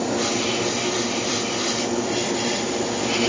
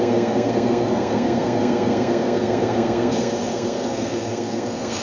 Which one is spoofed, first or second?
second